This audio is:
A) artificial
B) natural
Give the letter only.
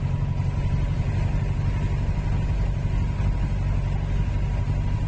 B